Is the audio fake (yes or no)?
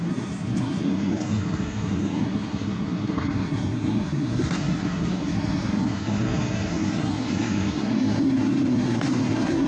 yes